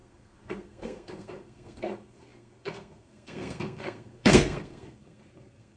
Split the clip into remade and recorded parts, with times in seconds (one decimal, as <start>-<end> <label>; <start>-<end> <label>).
0.0-5.8 remade